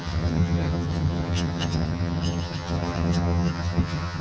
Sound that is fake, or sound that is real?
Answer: fake